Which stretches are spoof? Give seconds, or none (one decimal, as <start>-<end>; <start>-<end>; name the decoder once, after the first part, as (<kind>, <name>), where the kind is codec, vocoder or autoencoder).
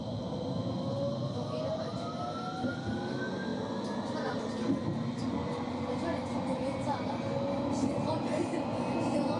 none